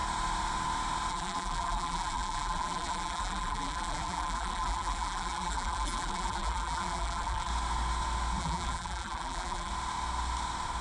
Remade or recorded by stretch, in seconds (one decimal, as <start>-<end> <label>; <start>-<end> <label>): 0.0-1.1 recorded; 1.1-7.5 remade; 7.5-8.4 recorded; 8.4-9.7 remade; 9.7-10.8 recorded